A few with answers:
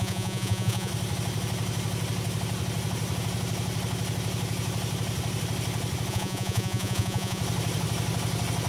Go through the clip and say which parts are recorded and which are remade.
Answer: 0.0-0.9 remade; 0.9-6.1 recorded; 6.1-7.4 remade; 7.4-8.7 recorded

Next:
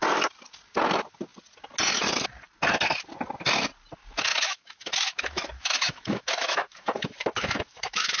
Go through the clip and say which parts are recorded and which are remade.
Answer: 0.0-4.3 recorded; 4.3-8.2 remade

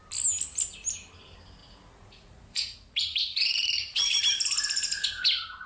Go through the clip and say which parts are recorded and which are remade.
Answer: 0.0-1.6 recorded; 1.6-4.2 remade; 4.2-5.7 recorded

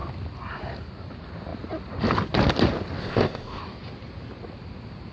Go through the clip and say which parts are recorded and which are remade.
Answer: 0.0-3.0 recorded; 3.0-3.6 remade; 3.6-5.1 recorded

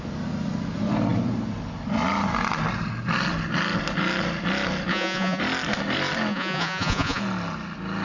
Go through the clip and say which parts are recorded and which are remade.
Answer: 0.0-4.9 recorded; 4.9-5.4 remade; 5.4-6.3 recorded; 6.3-7.2 remade; 7.2-8.0 recorded

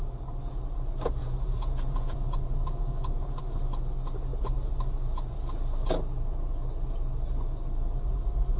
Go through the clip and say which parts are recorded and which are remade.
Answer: 0.0-1.2 recorded; 1.2-3.4 remade; 3.4-8.6 recorded